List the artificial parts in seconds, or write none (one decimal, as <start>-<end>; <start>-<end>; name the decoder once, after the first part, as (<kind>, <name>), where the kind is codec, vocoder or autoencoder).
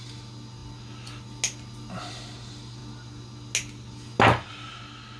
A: none